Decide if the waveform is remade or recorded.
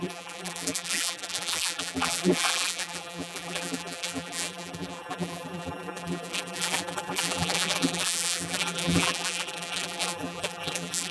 remade